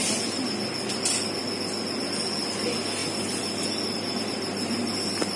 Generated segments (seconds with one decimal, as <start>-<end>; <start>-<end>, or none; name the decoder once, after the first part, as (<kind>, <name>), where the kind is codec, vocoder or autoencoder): none